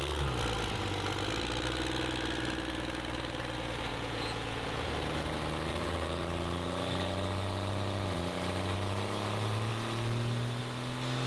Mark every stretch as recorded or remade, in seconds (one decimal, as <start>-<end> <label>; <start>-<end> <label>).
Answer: 0.0-3.9 recorded; 3.9-4.9 remade; 4.9-5.7 recorded; 5.7-6.2 remade; 6.2-11.3 recorded